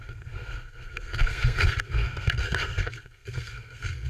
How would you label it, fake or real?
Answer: fake